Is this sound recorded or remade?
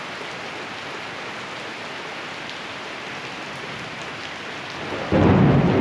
recorded